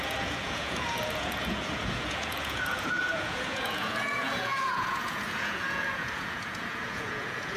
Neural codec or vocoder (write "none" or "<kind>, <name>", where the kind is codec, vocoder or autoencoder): vocoder, Vocos